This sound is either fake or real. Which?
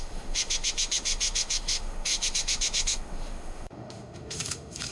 fake